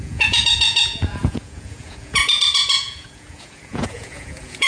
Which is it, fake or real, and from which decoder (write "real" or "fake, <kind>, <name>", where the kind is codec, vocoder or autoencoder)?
fake, vocoder, Vocos